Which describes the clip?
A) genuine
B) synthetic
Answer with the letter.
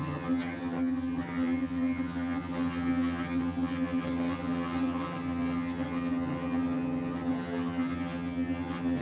B